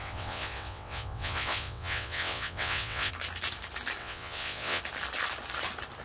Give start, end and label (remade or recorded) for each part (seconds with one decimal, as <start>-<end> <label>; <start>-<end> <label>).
0.0-3.1 remade; 3.1-4.0 recorded; 4.0-4.8 remade; 4.8-6.0 recorded